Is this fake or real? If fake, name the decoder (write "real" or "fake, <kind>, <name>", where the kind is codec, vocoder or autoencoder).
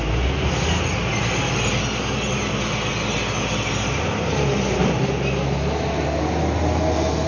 real